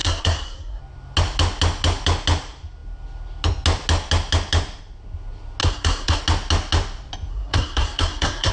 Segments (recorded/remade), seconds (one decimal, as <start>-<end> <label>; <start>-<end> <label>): 0.0-0.8 remade; 0.8-5.6 recorded; 5.6-6.2 remade; 6.2-7.3 recorded; 7.3-8.5 remade